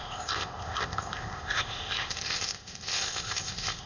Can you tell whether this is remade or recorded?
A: remade